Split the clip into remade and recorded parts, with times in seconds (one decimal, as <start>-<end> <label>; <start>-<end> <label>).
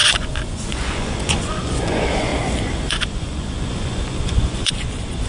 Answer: 0.0-5.3 remade